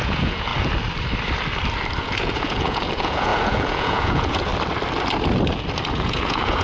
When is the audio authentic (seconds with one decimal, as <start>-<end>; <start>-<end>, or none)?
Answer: 0.5-2.0; 4.5-5.9